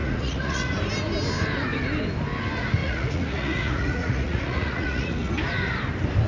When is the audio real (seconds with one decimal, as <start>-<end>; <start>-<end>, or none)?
0.7-2.8; 5.3-6.3